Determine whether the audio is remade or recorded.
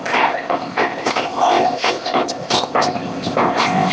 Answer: remade